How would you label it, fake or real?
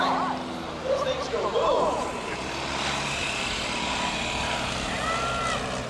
real